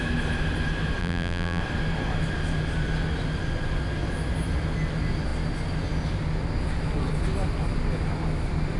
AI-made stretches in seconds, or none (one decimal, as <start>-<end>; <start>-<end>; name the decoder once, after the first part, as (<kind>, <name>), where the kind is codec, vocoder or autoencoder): 1.0-1.6 (vocoder, BigVGAN v2)

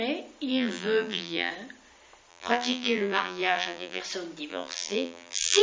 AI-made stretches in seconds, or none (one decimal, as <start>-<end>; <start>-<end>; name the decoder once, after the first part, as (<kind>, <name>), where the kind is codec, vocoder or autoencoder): 0.5-1.5 (vocoder, BigVGAN v2); 2.3-4.0; 4.5-5.6

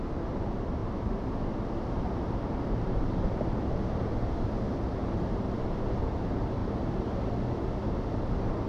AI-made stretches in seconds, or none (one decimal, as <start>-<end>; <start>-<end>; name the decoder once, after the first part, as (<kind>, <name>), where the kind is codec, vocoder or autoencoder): 0.8-4.5 (vocoder, BigVGAN v2); 5.0-6.0; 6.6-7.3

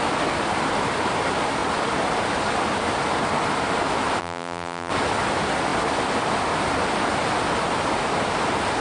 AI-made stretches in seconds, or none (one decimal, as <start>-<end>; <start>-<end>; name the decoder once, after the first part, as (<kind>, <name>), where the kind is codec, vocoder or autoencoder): 4.2-4.9 (vocoder, BigVGAN v2)

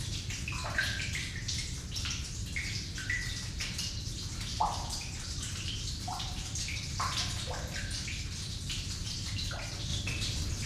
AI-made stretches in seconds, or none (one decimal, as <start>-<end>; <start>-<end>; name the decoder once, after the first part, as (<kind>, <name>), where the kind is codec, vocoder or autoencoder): none

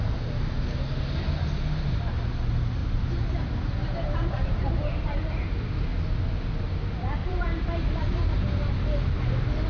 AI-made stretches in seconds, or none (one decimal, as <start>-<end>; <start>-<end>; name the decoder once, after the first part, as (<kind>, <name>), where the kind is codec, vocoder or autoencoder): 2.8-5.5 (vocoder, BigVGAN v2); 7.2-8.6

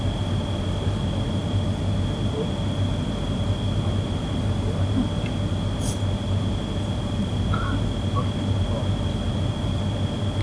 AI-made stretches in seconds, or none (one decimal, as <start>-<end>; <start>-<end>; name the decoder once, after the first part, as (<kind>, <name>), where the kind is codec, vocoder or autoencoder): none

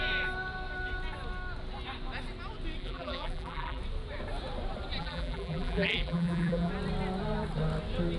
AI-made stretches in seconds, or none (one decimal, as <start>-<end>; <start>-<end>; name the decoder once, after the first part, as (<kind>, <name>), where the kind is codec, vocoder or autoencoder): 2.8-3.8 (vocoder, BigVGAN v2); 5.0-6.7